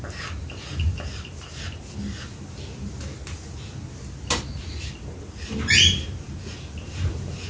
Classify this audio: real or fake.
real